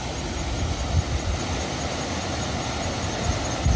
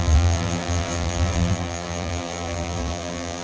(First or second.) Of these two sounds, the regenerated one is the second